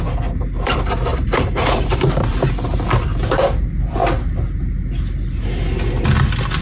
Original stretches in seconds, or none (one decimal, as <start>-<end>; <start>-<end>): 0.0-1.1; 2.5-6.6